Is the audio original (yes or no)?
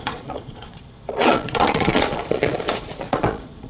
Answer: no